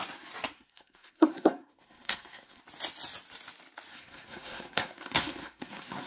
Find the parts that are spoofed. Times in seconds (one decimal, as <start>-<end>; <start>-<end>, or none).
0.5-2.6; 3.9-6.1